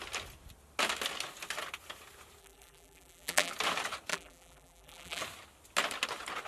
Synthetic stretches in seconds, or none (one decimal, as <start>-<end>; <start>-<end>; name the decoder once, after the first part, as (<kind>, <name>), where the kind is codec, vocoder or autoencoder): 2.4-3.5 (vocoder, BigVGAN v2); 4.1-5.2